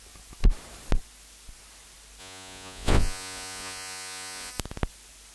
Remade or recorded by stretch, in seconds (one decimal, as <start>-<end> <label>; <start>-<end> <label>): 0.0-2.2 recorded; 2.2-4.5 remade; 4.5-5.3 recorded